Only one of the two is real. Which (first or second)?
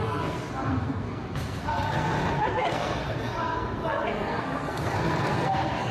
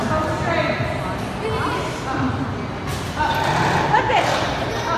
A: second